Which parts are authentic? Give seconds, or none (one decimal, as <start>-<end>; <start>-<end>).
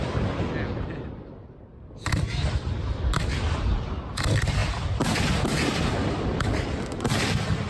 0.0-7.7